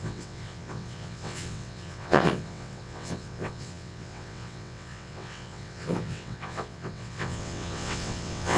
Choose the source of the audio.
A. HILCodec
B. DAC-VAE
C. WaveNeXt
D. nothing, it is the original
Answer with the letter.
C